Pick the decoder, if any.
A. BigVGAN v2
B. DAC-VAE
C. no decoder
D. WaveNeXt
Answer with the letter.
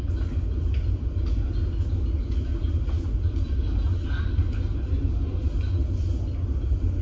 C